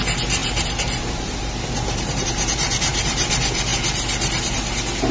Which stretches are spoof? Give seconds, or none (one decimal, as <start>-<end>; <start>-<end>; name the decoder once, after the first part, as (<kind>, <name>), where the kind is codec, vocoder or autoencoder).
0.4-3.3 (vocoder, BigVGAN v2)